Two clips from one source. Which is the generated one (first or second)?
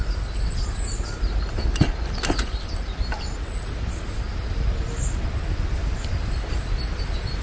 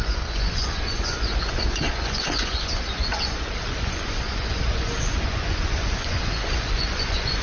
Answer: second